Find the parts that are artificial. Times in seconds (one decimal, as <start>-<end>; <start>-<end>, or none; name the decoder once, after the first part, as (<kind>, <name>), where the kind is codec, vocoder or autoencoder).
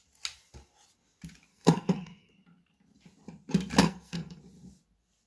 1.5-2.3 (codec, SNAC); 3.8-4.4